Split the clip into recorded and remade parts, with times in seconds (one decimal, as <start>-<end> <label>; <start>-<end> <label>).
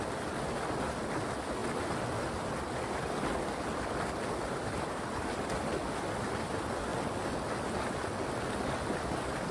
0.0-9.5 recorded